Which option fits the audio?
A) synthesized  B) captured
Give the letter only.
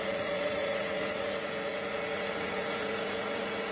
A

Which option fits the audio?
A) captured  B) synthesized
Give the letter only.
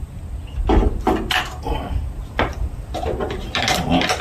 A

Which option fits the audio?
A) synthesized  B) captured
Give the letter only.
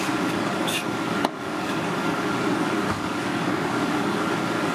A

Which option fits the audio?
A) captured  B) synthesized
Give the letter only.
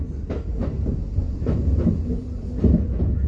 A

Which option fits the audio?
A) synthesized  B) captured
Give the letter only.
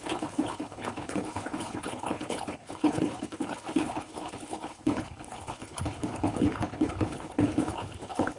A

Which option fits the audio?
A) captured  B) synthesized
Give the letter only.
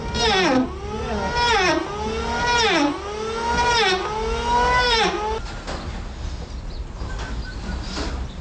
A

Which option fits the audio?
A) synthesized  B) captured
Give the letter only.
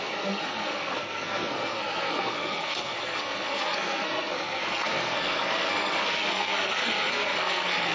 A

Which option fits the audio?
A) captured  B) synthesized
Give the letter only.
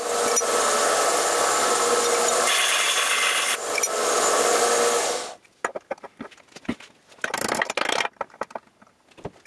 A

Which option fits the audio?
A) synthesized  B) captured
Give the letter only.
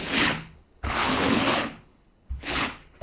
A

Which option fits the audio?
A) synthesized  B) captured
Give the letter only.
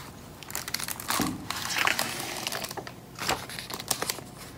B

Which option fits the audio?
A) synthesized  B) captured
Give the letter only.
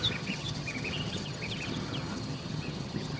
A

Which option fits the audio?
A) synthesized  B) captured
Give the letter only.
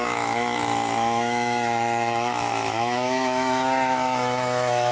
A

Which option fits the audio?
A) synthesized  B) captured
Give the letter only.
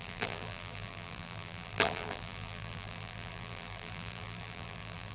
A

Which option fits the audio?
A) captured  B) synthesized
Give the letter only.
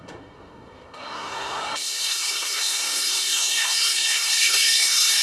B